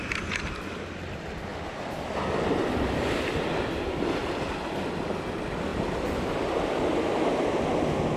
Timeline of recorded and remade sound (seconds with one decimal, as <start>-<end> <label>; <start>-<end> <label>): 0.0-8.2 recorded